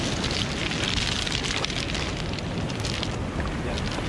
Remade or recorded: recorded